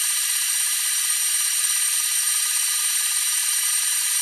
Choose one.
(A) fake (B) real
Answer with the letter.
A